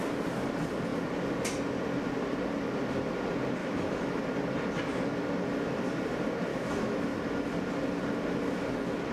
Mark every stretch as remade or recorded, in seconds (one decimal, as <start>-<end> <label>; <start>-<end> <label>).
0.0-3.6 recorded; 3.6-4.2 remade; 4.2-6.5 recorded; 6.5-7.0 remade; 7.0-9.1 recorded